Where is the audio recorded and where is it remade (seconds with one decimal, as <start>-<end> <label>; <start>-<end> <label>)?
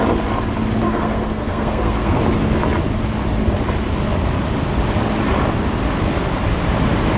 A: 0.0-0.8 recorded; 0.8-2.2 remade; 2.2-7.2 recorded